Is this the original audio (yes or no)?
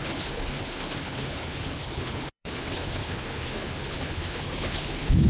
no